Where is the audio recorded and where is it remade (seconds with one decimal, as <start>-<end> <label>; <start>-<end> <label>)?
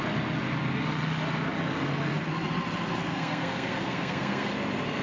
0.0-3.1 recorded; 3.1-4.5 remade; 4.5-5.0 recorded